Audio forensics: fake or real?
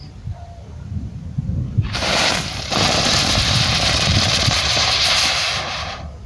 fake